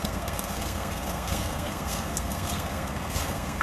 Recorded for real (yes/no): no